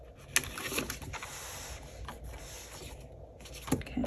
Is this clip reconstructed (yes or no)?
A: no